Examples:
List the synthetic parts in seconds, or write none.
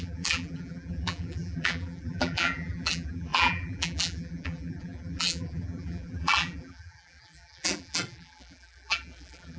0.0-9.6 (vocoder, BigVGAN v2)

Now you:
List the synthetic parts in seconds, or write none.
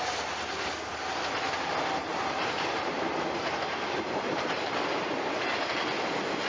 2.1-5.2 (vocoder, BigVGAN v2)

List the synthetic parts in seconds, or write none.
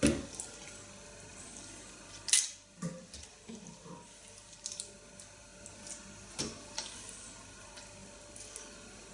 none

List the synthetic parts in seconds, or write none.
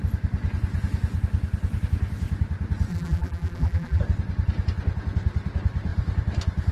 2.9-4.0 (vocoder, BigVGAN v2)